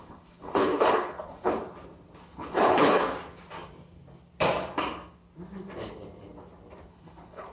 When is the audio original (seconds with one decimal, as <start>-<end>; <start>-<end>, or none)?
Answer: 1.5-2.2; 3.0-6.9